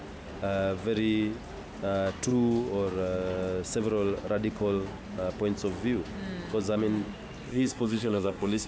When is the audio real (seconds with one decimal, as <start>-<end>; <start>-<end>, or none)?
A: 0.0-7.5